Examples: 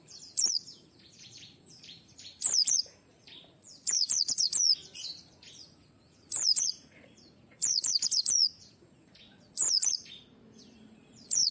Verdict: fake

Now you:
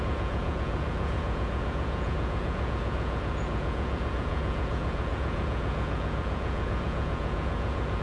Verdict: fake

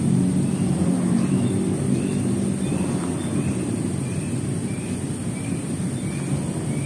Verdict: real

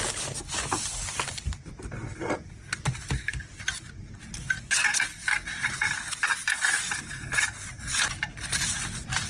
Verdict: real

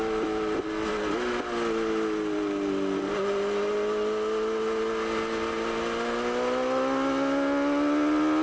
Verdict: real